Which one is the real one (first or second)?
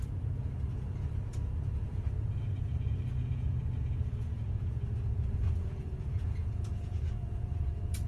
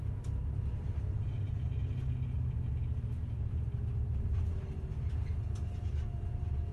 second